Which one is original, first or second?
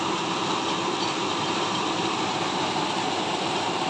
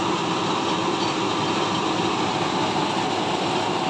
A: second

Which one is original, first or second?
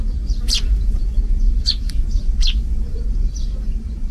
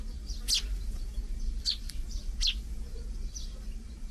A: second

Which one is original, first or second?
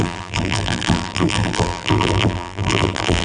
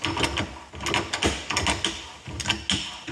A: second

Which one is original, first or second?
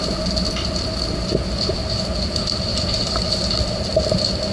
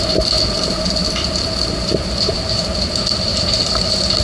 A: first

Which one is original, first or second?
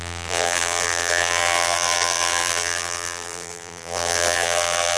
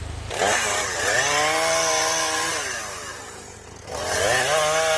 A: second